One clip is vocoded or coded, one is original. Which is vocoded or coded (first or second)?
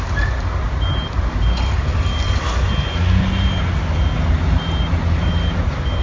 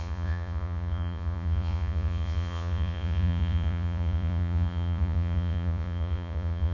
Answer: second